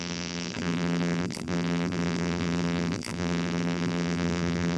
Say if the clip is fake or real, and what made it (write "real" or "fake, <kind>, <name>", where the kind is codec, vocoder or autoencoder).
fake, vocoder, BigVGAN v2